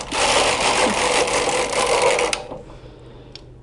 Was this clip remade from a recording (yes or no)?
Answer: no